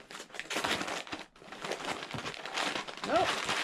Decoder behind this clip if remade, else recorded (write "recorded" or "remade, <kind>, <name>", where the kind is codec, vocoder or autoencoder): recorded